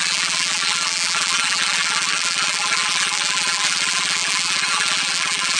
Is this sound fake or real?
fake